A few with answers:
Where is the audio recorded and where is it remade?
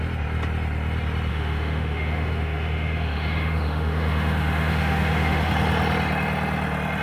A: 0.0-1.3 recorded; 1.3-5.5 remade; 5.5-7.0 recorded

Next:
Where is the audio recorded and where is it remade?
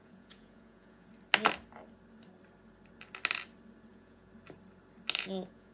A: 0.0-1.1 remade; 1.1-3.9 recorded; 3.9-4.3 remade; 4.3-5.2 recorded; 5.2-5.7 remade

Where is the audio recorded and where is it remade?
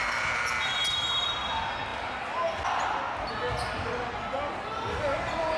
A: 0.0-5.6 recorded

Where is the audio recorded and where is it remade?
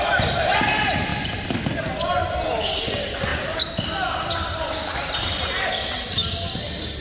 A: 0.0-1.1 recorded; 1.1-1.8 remade; 1.8-3.3 recorded; 3.3-5.7 remade; 5.7-7.0 recorded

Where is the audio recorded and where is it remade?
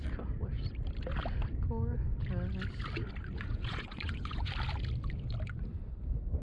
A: 0.0-3.2 recorded; 3.2-4.5 remade; 4.5-6.4 recorded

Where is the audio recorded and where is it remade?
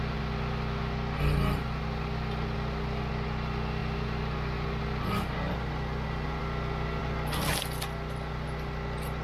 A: 0.0-9.2 recorded